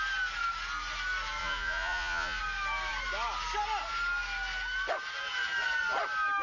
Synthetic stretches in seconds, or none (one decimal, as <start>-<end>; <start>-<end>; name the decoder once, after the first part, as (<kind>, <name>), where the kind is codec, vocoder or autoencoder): 1.4-2.4 (vocoder, Vocos)